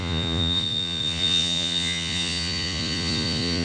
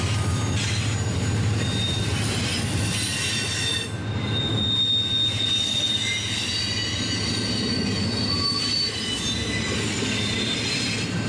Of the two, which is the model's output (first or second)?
first